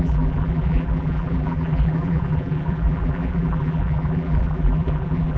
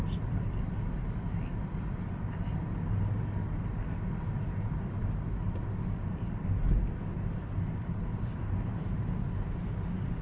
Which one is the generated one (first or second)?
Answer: first